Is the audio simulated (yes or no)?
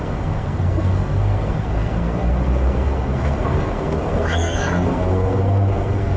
yes